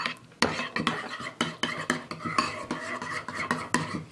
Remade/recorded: recorded